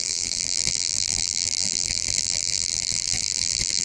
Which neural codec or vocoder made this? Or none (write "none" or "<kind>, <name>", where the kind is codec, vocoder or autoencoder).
vocoder, BigVGAN v2